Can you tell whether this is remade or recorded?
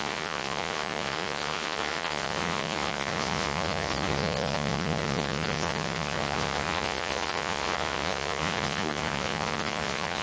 remade